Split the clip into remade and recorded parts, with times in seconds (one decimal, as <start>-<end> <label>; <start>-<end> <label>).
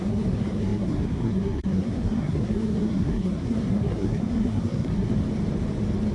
0.0-5.1 remade; 5.1-6.1 recorded